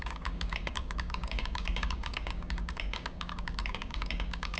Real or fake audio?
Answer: fake